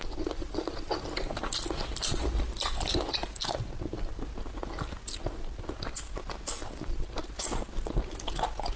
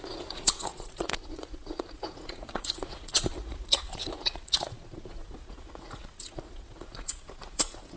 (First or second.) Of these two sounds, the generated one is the second